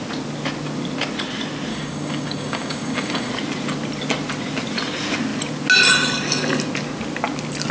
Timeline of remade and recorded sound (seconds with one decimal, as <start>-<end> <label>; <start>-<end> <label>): 0.0-1.7 recorded; 1.7-3.3 remade; 3.3-7.7 recorded